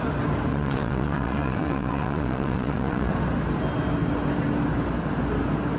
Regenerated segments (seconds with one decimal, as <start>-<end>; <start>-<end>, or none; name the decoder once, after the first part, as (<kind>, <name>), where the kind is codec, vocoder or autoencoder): 0.5-3.1 (vocoder, WaveNeXt)